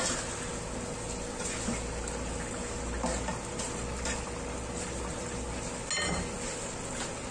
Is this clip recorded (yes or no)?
yes